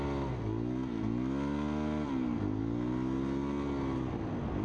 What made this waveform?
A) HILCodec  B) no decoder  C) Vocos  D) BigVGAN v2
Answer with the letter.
B